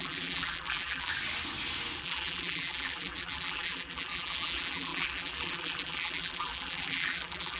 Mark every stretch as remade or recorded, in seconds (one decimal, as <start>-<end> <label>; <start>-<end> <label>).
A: 0.0-1.1 remade; 1.1-2.0 recorded; 2.0-7.6 remade